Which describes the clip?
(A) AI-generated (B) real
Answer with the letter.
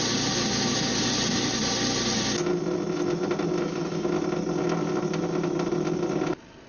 B